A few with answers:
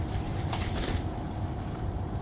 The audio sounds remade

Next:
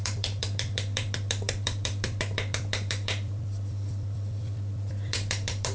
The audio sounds remade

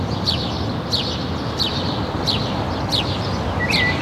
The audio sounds remade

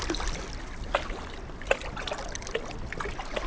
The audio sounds recorded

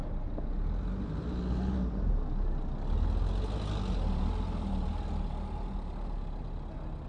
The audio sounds recorded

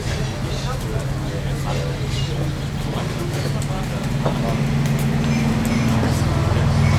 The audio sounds recorded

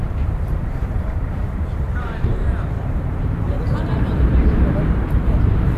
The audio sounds remade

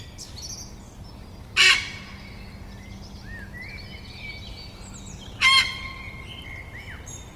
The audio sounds recorded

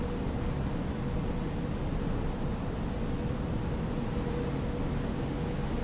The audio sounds recorded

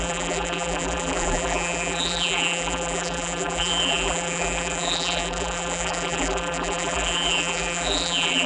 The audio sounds remade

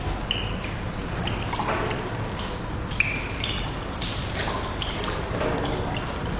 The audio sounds recorded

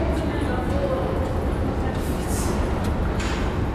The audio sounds recorded